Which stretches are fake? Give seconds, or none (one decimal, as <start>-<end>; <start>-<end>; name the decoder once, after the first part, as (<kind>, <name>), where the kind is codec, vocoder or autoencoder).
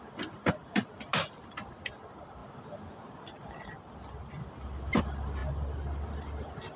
none